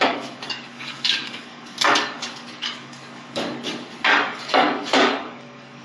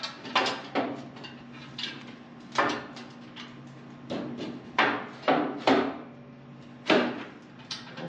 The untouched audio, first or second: second